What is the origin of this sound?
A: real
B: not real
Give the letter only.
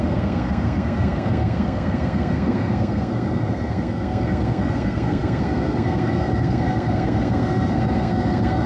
B